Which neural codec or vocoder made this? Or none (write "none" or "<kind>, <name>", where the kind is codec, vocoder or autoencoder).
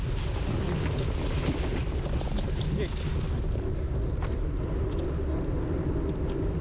none